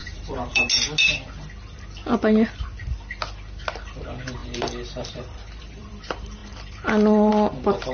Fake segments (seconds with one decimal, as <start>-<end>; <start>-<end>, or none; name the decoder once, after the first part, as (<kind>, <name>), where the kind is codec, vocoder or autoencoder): 0.0-0.7 (vocoder, BigVGAN v2); 4.4-5.9; 6.4-7.3